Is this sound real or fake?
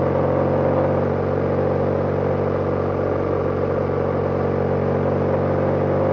real